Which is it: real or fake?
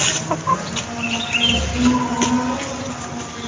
real